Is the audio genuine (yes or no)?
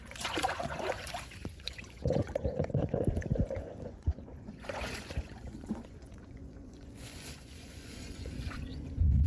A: no